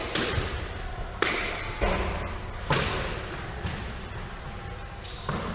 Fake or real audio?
real